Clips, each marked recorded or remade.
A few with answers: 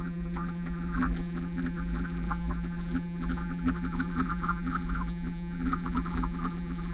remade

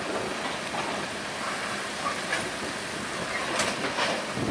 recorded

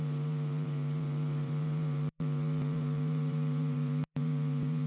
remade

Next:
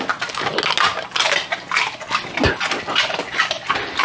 recorded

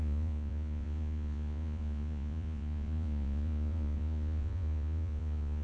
remade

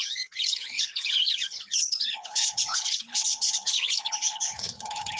remade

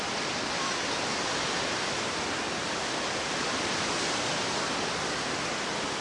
recorded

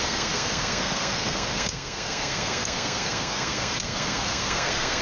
remade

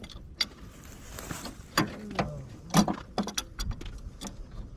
recorded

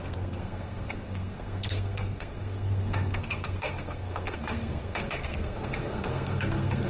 remade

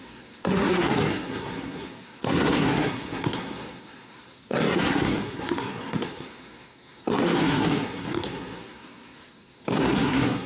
remade